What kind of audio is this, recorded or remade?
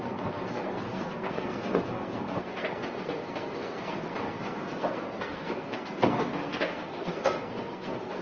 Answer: remade